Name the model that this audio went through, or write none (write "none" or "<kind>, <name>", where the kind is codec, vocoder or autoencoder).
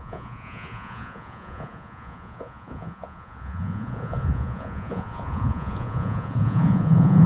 vocoder, Vocos